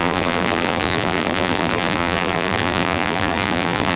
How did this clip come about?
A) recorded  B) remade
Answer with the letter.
B